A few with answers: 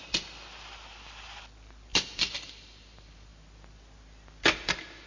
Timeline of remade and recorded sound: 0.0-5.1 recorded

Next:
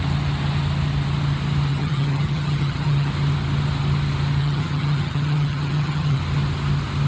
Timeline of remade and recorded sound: 0.0-1.7 recorded; 1.7-3.1 remade; 3.1-4.4 recorded; 4.4-6.2 remade; 6.2-7.1 recorded

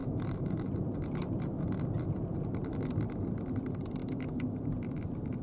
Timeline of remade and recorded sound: 0.0-0.7 remade; 0.7-4.0 recorded; 4.0-4.6 remade; 4.6-5.4 recorded